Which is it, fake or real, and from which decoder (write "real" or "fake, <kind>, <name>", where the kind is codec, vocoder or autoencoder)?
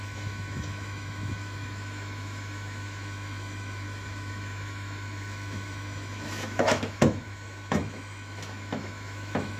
fake, autoencoder, DAC-VAE